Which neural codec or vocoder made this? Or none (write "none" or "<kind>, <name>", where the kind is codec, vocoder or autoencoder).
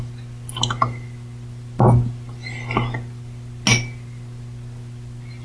none